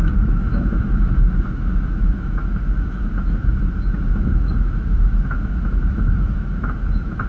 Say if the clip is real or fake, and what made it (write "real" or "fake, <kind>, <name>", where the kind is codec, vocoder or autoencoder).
fake, autoencoder, DAC-VAE